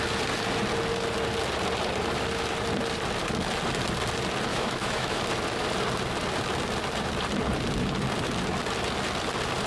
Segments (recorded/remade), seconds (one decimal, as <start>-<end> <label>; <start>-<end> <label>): 0.0-4.5 recorded; 4.5-5.2 remade; 5.2-9.7 recorded